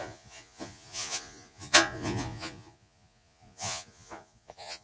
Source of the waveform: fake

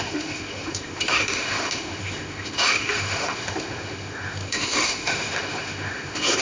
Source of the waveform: fake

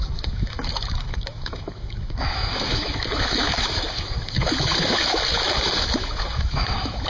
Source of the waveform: fake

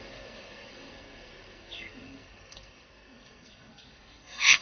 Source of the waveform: fake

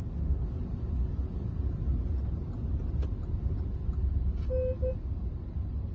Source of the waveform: real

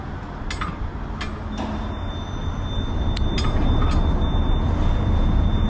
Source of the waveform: real